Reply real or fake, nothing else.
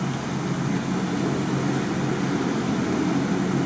real